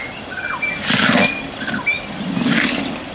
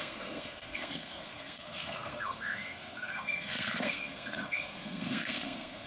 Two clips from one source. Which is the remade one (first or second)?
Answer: second